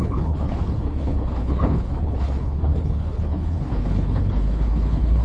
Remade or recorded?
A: remade